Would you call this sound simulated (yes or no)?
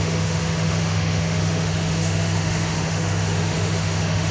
yes